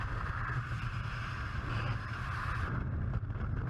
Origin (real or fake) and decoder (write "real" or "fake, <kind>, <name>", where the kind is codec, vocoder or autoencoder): real